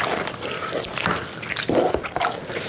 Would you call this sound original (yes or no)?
yes